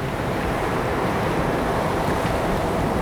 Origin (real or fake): fake